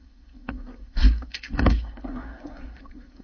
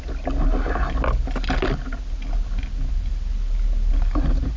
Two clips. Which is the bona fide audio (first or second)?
second